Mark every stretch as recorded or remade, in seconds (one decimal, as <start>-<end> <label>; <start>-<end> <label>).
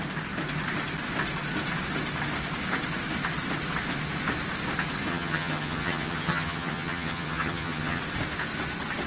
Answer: 0.0-5.1 recorded; 5.1-8.0 remade; 8.0-9.1 recorded